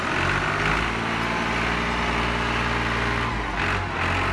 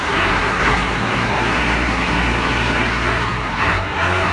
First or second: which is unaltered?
first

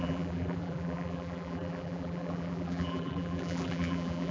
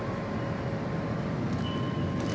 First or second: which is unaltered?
second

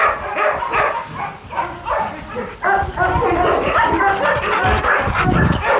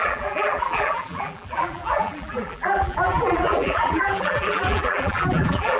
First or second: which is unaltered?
first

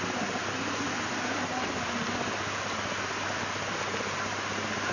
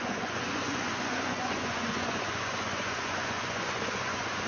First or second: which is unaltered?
first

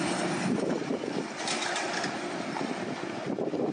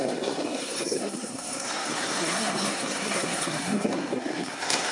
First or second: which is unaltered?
first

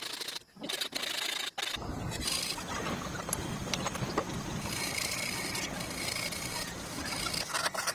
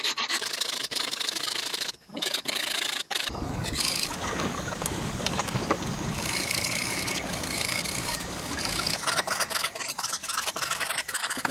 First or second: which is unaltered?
first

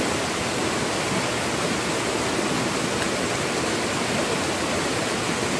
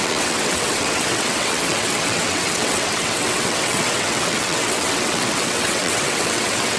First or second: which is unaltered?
first